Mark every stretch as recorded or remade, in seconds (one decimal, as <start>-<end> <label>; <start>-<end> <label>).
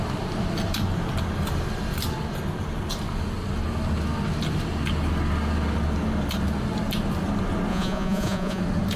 0.0-7.7 recorded; 7.7-8.6 remade; 8.6-9.0 recorded